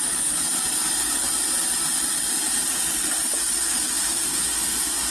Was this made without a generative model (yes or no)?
yes